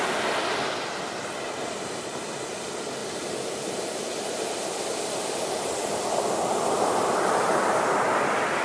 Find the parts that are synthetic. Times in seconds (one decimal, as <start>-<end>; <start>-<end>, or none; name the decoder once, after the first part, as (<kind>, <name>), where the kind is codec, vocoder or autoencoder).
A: none